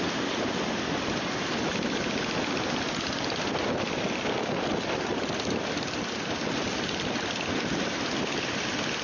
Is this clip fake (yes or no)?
no